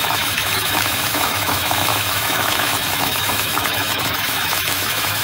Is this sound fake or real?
fake